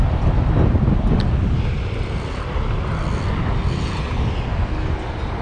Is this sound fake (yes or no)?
no